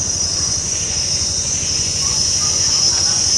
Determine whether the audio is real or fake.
fake